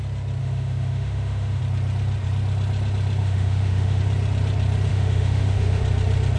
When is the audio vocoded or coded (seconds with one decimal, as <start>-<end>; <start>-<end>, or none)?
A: 0.4-1.6; 3.2-4.0; 4.9-5.8